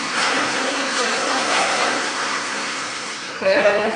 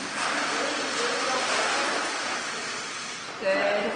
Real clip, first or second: second